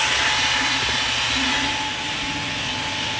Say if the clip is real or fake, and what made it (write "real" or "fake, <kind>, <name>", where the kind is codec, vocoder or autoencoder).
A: real